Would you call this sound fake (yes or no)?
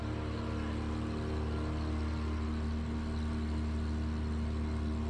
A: no